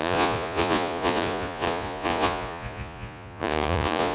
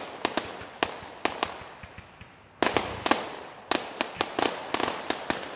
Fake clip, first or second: first